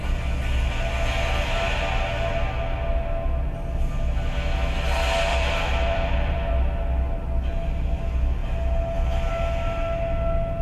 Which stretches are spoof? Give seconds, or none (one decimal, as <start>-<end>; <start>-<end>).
5.3-6.5